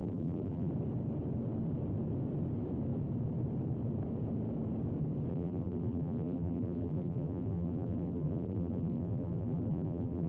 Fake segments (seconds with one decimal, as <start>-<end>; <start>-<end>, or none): 0.0-0.7; 5.3-10.3